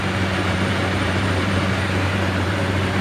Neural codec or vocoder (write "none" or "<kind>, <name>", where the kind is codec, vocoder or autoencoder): vocoder, BigVGAN v2